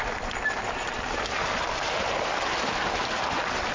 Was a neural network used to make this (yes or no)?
no